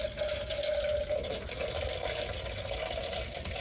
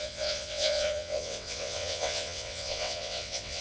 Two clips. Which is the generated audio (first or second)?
second